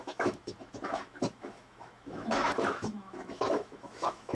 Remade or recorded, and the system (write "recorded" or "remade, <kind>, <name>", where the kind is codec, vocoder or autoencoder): remade, autoencoder, DAC-VAE